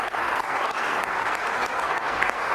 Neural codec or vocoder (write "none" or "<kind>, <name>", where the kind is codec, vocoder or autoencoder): codec, SNAC